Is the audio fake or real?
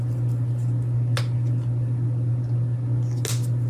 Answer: real